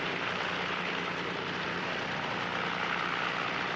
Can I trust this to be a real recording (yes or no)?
yes